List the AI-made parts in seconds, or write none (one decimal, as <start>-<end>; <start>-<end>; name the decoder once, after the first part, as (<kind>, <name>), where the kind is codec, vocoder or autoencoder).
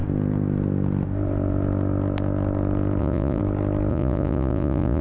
3.0-3.4 (vocoder, Vocos); 3.9-5.0